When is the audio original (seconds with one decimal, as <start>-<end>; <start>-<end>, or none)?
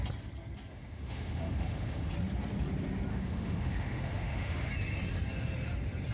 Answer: 0.0-0.7; 2.1-3.1; 4.7-6.1